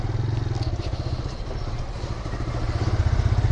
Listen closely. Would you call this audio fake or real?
real